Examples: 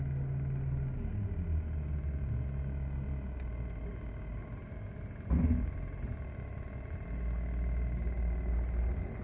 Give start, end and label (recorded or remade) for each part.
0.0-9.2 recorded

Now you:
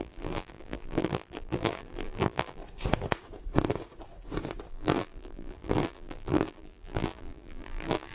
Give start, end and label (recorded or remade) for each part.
0.0-2.6 remade; 2.6-4.7 recorded; 4.7-8.1 remade

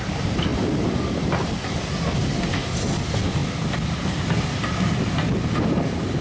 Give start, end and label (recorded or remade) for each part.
0.0-6.2 recorded

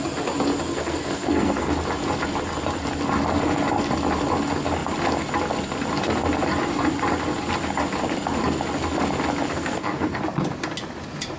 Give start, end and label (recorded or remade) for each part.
0.0-0.7 recorded; 0.7-1.7 remade; 1.7-9.5 recorded; 9.5-10.2 remade; 10.2-11.4 recorded

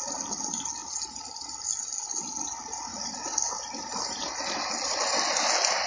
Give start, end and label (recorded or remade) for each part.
0.0-5.9 recorded